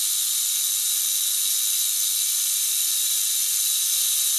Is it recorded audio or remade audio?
remade